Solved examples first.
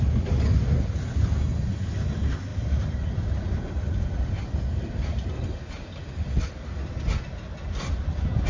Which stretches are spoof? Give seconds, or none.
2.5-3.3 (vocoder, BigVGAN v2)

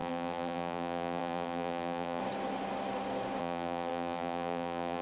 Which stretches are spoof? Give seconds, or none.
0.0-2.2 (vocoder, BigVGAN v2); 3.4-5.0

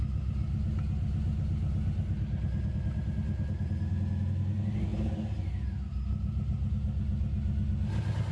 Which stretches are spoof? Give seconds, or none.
none

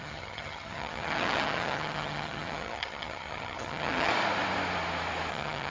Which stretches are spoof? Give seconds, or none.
0.0-4.1 (vocoder, HiFi-GAN); 5.3-5.7

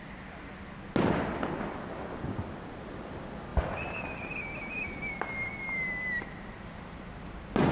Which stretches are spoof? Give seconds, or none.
none

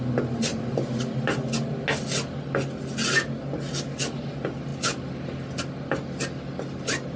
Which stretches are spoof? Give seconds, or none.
4.7-5.6 (vocoder, BigVGAN v2)

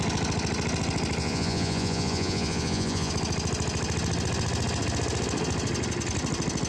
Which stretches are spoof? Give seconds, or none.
1.2-3.1 (vocoder, Vocos)

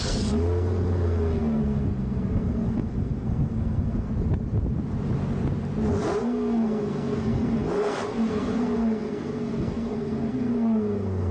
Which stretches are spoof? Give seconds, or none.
0.0-4.1 (codec, SNAC); 6.2-11.3